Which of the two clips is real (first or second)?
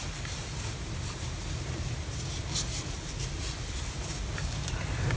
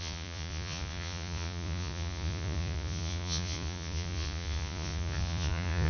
first